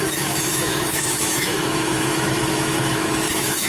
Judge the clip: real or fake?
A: fake